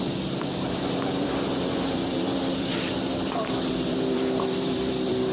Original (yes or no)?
no